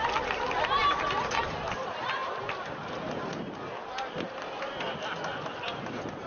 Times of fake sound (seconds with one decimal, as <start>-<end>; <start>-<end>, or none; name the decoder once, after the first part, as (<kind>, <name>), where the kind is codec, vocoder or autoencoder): none